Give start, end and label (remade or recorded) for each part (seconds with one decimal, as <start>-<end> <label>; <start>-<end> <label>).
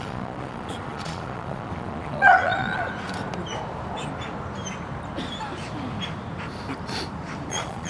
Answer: 0.0-2.8 remade; 2.8-7.5 recorded; 7.5-7.9 remade